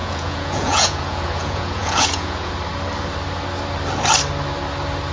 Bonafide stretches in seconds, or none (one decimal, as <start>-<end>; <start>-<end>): 2.5-5.1